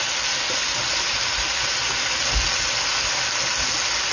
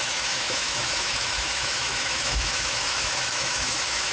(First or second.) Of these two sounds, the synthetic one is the second